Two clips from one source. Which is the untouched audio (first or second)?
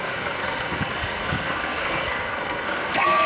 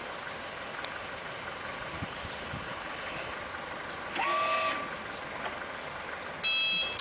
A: second